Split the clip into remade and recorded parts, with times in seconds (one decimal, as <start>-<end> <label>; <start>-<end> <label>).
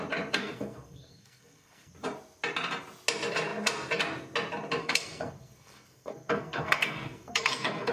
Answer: 0.0-0.4 recorded; 0.4-1.9 remade; 1.9-4.8 recorded; 4.8-7.9 remade